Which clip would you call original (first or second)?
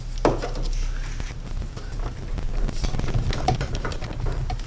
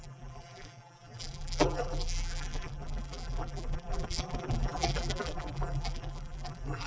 first